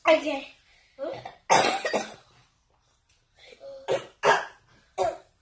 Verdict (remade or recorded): recorded